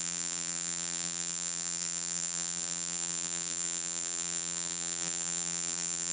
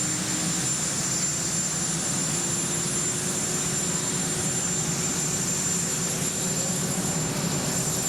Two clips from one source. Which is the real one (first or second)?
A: second